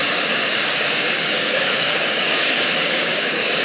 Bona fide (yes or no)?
no